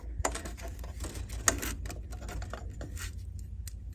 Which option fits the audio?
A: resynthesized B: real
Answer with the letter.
B